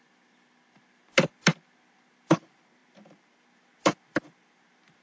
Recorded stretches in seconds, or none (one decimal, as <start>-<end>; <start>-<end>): 0.0-5.0